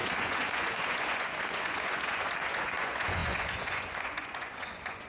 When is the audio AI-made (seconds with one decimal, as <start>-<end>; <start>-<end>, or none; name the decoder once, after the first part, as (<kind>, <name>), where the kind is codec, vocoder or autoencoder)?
0.0-5.1 (vocoder, Vocos)